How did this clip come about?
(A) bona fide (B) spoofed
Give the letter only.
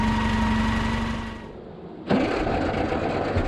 A